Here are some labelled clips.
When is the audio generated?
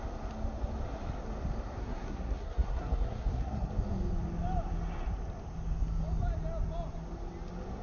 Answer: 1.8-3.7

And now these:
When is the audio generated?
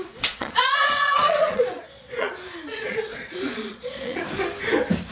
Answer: 0.0-2.3; 2.7-4.2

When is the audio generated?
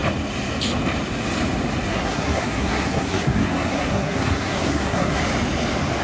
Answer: 1.9-5.2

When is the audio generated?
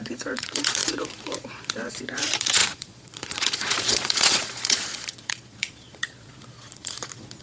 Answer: 0.0-7.4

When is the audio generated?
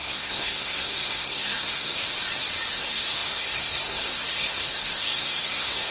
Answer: 0.0-1.9; 2.7-5.9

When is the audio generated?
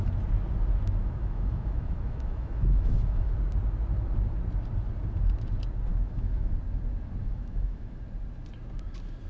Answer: 1.0-3.3; 5.9-6.5; 7.2-8.0